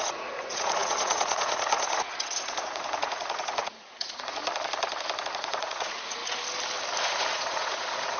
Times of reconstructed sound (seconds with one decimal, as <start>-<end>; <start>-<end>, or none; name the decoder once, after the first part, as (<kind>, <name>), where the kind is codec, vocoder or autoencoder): 0.0-4.4 (vocoder, Vocos); 5.2-6.2; 7.0-8.2